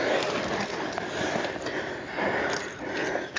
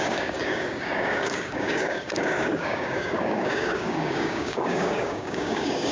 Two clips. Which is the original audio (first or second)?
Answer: first